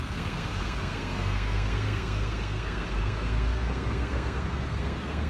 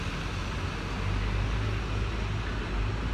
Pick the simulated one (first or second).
first